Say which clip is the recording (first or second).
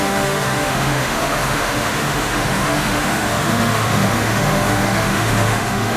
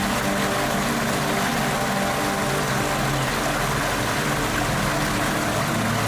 second